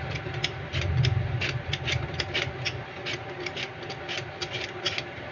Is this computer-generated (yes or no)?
no